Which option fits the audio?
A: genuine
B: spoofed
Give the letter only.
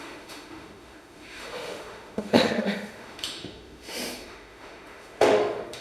B